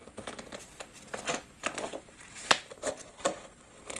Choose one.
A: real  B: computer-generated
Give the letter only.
A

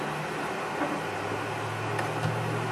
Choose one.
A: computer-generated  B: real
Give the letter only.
B